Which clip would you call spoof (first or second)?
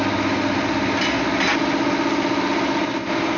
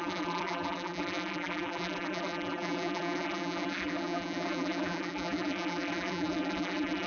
second